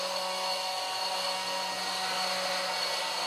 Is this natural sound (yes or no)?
yes